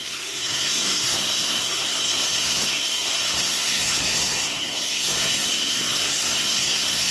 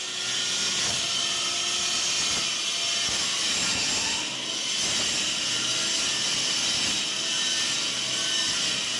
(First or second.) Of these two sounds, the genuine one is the second